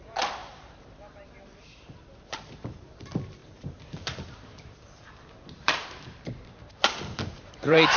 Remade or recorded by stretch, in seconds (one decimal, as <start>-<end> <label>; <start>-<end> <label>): 0.0-0.4 recorded; 0.4-3.0 remade; 3.0-3.4 recorded; 3.4-8.0 remade